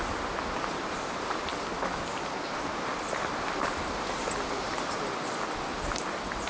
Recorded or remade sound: recorded